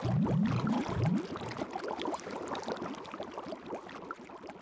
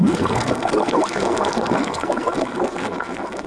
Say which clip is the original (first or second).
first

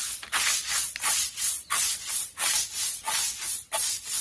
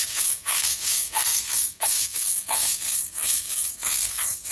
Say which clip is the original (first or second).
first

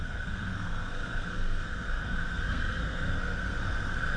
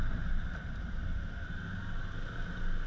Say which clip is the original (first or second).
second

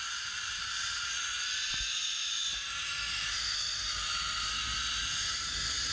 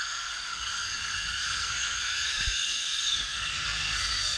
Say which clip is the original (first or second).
first